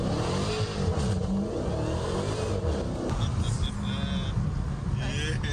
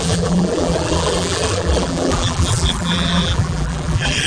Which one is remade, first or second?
second